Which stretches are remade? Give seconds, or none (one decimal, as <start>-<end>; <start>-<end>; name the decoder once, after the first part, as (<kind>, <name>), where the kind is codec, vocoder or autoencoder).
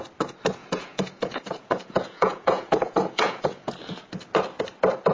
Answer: 0.6-3.7 (vocoder, Vocos)